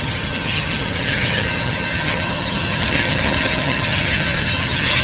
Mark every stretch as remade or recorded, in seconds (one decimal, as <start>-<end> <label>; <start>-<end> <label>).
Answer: 0.0-5.0 remade